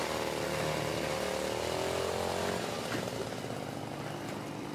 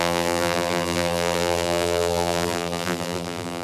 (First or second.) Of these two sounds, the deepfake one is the second